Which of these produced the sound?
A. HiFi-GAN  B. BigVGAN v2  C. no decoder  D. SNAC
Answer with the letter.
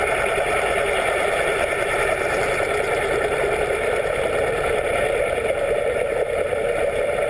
B